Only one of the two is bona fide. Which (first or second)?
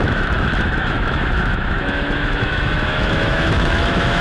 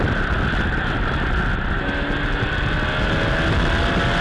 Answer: second